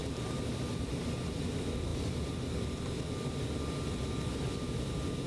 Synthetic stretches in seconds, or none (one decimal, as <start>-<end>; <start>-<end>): 0.0-1.2